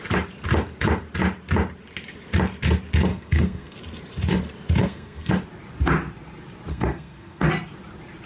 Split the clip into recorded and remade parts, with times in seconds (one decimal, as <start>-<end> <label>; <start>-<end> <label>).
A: 0.0-3.1 recorded; 3.1-3.8 remade; 3.8-4.8 recorded; 4.8-5.3 remade; 5.3-6.7 recorded; 6.7-7.5 remade; 7.5-8.3 recorded